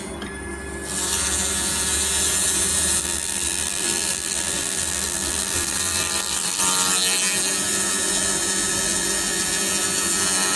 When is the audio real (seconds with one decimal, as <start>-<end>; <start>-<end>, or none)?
0.0-3.0; 6.6-10.6